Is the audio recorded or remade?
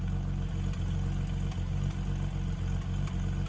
recorded